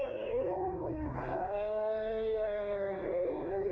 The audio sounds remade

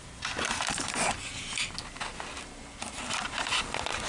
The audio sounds recorded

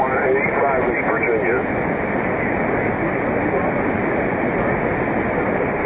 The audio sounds recorded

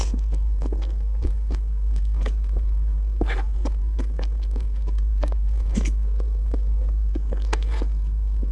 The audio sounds remade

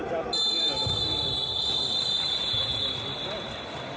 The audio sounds recorded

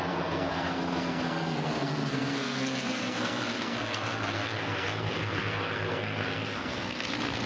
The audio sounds remade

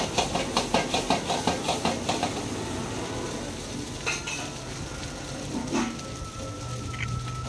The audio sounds recorded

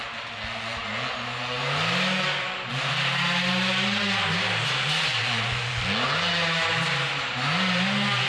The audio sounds recorded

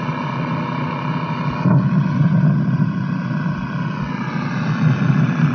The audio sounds recorded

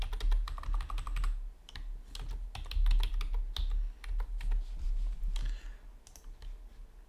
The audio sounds recorded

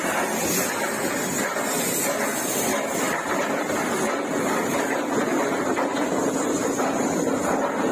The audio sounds recorded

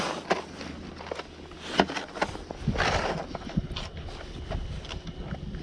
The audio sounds recorded